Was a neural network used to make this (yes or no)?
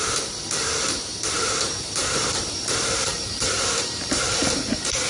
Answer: yes